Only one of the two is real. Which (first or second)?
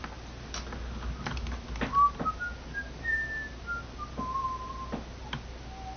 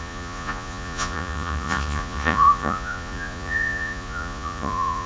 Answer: first